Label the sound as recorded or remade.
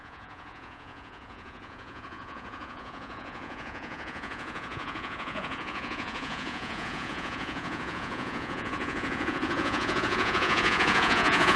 remade